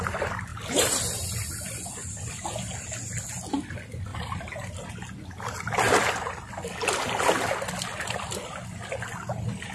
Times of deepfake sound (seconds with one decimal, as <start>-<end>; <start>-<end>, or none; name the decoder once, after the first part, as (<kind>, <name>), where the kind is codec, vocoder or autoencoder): none